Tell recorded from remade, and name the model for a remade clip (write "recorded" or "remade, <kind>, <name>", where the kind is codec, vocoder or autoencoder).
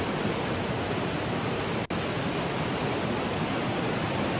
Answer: recorded